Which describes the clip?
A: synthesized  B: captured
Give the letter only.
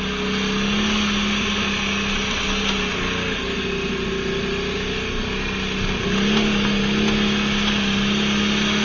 B